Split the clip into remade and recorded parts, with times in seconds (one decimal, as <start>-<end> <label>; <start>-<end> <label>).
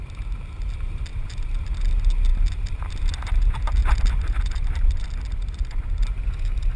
0.0-1.1 recorded; 1.1-1.6 remade; 1.6-3.8 recorded; 3.8-6.0 remade; 6.0-6.8 recorded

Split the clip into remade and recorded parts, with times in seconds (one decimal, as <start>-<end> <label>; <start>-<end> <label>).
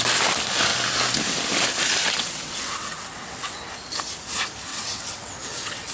0.0-2.0 recorded; 2.0-3.7 remade; 3.7-4.7 recorded; 4.7-5.9 remade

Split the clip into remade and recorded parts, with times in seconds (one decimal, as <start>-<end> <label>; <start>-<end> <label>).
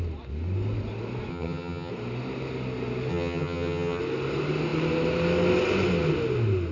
0.0-1.3 recorded; 1.3-1.9 remade; 1.9-3.1 recorded; 3.1-4.0 remade; 4.0-6.7 recorded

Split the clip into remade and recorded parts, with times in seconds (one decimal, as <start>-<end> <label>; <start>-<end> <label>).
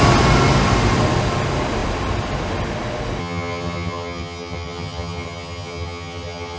0.0-3.2 recorded; 3.2-6.6 remade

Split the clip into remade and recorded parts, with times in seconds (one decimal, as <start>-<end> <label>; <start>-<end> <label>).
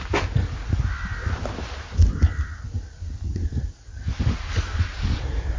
0.0-5.6 recorded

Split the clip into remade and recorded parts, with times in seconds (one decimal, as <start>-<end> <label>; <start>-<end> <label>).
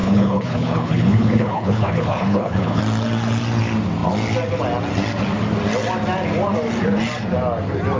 0.0-2.8 remade; 2.8-8.0 recorded